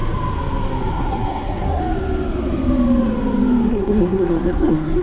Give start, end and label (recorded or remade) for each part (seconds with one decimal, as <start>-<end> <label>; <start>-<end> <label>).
0.0-0.9 recorded; 0.9-1.8 remade; 1.8-3.7 recorded; 3.7-5.0 remade